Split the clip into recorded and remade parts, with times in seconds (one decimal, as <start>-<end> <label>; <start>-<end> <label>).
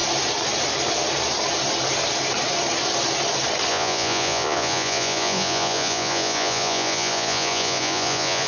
0.0-3.7 recorded; 3.7-8.5 remade